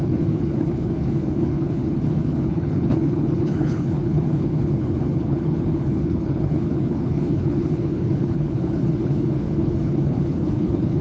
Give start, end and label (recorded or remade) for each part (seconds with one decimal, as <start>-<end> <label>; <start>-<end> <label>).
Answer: 0.0-11.0 remade